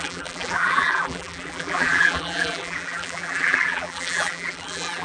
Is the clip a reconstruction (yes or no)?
yes